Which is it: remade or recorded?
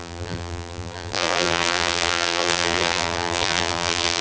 remade